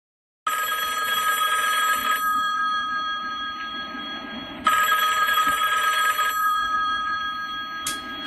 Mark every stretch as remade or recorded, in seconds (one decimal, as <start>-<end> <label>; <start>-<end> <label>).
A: 0.0-2.0 recorded; 2.0-6.0 remade; 6.0-6.4 recorded; 6.4-7.2 remade; 7.2-8.3 recorded